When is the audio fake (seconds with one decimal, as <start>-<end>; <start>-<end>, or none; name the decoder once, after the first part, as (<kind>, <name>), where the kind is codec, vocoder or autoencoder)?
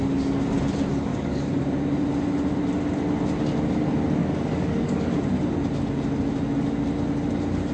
0.9-1.6 (codec, DAC); 4.2-5.1